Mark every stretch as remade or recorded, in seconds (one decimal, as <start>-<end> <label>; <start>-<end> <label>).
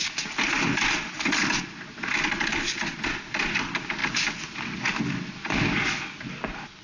0.0-6.8 recorded